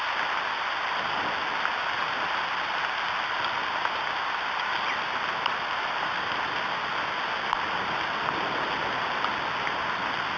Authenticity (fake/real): real